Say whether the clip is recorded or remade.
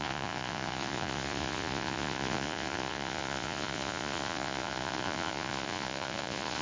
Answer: remade